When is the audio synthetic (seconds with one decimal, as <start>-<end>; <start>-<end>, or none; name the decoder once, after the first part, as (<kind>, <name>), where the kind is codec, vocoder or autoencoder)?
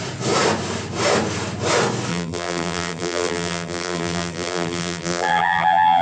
2.1-6.0 (vocoder, BigVGAN v2)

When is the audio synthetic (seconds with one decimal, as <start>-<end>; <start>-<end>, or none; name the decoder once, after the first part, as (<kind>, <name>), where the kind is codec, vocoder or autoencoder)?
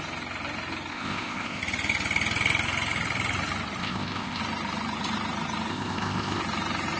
0.9-1.6 (codec, ZipCodec); 3.8-4.4; 5.7-6.4